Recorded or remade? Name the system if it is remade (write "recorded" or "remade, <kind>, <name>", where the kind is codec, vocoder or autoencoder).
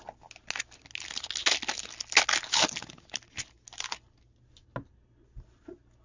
recorded